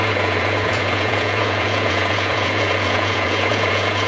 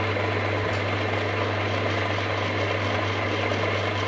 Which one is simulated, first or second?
first